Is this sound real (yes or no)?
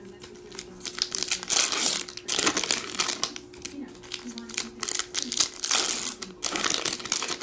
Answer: yes